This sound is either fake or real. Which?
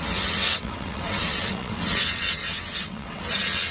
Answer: fake